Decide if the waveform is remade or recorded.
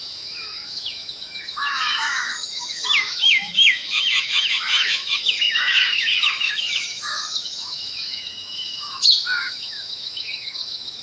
remade